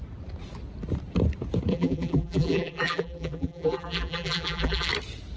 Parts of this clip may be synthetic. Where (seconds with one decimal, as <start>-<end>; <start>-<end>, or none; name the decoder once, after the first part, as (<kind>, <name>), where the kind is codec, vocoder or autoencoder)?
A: 1.7-4.9 (vocoder, BigVGAN v2)